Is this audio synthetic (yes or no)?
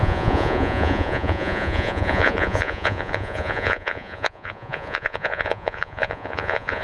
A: yes